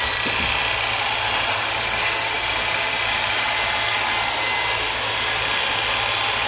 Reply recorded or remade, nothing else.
recorded